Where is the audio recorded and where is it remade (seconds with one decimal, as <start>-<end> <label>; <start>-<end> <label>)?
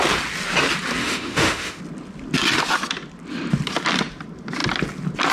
0.0-1.0 recorded; 1.0-1.8 remade; 1.8-5.3 recorded